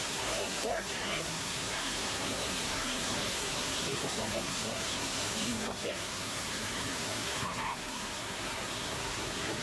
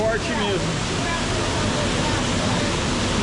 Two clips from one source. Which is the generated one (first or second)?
first